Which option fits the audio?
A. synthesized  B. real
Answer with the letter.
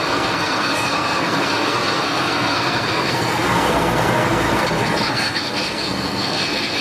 A